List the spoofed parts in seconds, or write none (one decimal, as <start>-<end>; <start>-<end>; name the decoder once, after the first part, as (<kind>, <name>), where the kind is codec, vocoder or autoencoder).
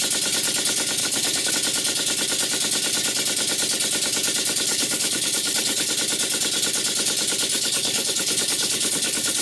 1.0-1.5 (codec, HILCodec); 4.7-5.9; 7.5-9.4